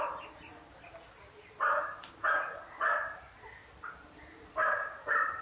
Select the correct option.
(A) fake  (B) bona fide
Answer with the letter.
B